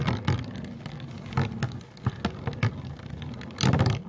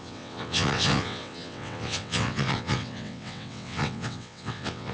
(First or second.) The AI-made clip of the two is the second